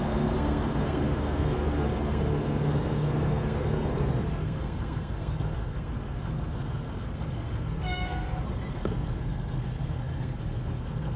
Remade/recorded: remade